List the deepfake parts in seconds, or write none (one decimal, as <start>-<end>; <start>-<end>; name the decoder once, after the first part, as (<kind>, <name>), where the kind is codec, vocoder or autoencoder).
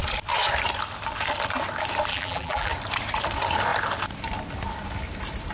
2.1-2.7 (vocoder, BigVGAN v2)